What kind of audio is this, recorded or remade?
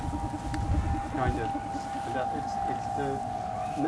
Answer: recorded